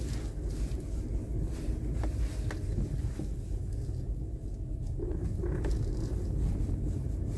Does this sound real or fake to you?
real